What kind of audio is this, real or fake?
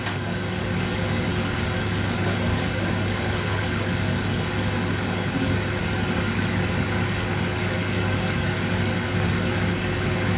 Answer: fake